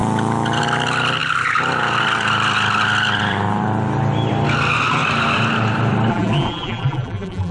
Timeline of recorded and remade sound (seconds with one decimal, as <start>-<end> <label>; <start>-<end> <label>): 0.0-6.1 recorded; 6.1-7.5 remade